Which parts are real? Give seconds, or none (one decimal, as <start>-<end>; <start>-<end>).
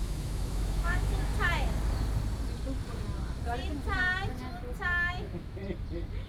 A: 1.3-5.1; 5.6-6.3